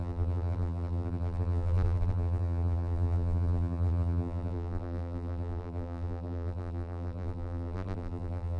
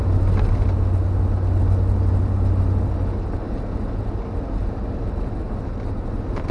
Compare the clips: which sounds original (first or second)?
second